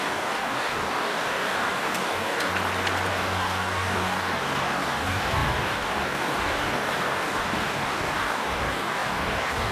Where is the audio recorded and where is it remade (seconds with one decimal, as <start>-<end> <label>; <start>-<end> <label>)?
0.0-2.5 remade; 2.5-3.1 recorded; 3.1-9.7 remade